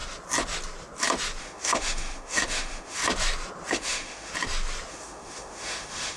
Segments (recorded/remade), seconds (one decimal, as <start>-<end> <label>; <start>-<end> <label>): 0.0-1.4 recorded; 1.4-3.0 remade; 3.0-3.7 recorded; 3.7-4.3 remade; 4.3-4.9 recorded; 4.9-6.2 remade